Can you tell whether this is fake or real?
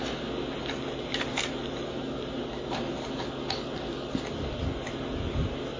real